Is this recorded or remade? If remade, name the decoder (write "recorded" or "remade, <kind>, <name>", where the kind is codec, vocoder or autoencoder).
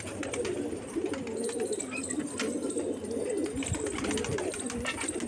recorded